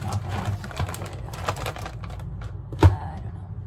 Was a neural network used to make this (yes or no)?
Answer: no